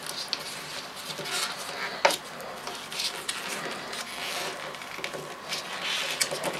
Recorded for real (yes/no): yes